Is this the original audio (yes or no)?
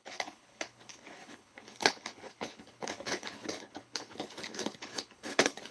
no